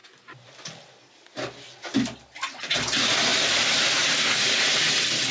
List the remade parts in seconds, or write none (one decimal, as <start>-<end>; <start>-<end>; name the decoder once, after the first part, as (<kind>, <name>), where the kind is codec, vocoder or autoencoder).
none